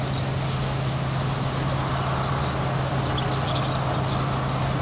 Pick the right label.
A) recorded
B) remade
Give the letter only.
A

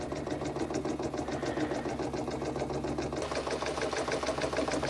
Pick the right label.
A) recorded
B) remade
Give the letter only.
A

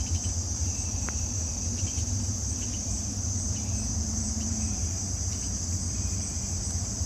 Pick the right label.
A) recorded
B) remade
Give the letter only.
B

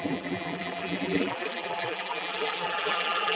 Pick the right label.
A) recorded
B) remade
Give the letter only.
B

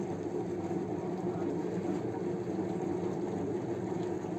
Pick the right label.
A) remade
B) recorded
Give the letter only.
B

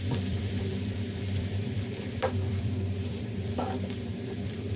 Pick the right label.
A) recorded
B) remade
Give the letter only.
B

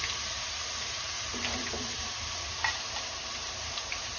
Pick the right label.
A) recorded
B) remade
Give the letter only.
B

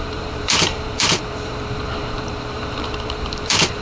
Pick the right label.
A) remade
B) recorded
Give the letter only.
A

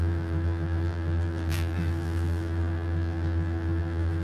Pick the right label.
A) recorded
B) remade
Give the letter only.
B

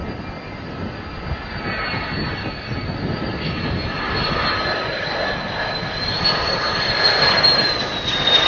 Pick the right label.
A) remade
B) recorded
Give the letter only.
B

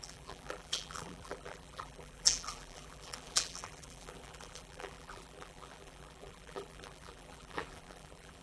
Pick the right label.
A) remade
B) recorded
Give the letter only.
A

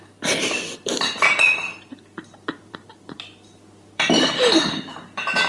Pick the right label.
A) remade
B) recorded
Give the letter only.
A